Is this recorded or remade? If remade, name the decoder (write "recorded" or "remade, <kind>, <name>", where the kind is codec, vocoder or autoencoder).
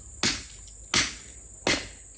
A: recorded